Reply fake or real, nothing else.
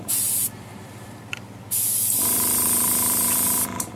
fake